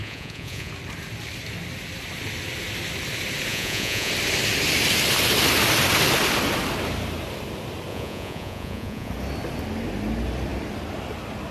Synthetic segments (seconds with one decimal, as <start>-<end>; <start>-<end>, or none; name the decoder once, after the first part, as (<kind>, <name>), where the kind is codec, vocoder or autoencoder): 0.0-0.7 (vocoder, Vocos); 3.5-4.1; 7.9-9.1

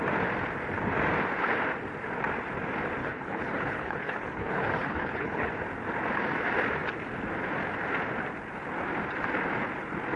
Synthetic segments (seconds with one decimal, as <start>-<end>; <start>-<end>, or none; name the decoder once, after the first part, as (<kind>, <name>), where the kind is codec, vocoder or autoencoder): 3.0-5.5 (codec, HILCodec)

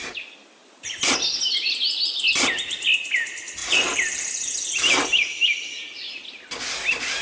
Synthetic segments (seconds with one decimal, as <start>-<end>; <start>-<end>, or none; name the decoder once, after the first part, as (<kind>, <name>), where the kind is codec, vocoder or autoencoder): 0.6-1.4 (vocoder, BigVGAN v2); 3.6-4.3